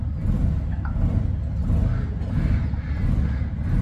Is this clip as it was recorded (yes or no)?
yes